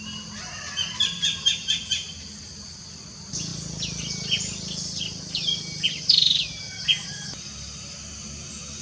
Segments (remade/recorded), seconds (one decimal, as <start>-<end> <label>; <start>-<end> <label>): 0.0-8.8 recorded